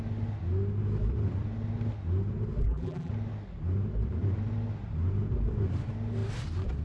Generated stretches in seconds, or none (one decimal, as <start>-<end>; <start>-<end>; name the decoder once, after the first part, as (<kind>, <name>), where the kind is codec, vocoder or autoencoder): 2.6-3.1 (vocoder, BigVGAN v2)